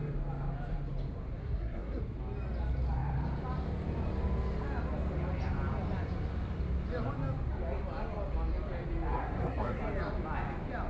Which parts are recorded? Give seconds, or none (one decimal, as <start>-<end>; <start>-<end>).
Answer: 0.0-1.4; 2.0-9.1; 9.8-10.9